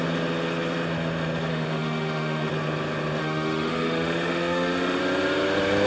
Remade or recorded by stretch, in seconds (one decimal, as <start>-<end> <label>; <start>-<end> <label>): 0.0-1.5 recorded; 1.5-2.5 remade; 2.5-3.2 recorded; 3.2-5.0 remade; 5.0-5.9 recorded